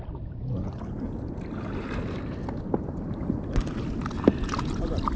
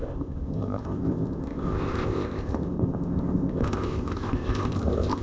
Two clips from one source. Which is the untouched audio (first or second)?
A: first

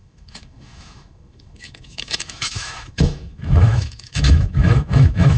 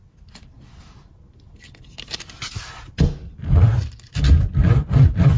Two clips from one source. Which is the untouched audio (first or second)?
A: second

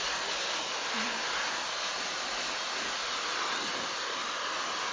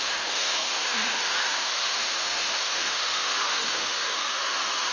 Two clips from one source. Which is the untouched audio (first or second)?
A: first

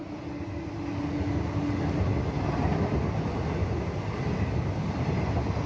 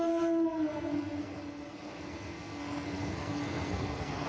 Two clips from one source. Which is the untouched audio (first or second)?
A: first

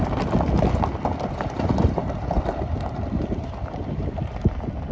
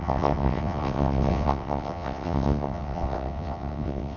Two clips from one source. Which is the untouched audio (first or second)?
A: first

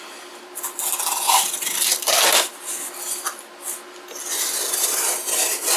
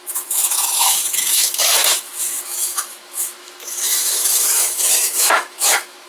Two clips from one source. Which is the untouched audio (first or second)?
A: first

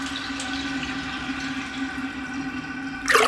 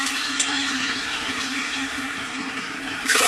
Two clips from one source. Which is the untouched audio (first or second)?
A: first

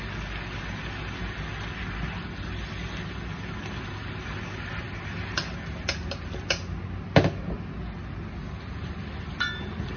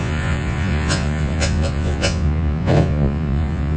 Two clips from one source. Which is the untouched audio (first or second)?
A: first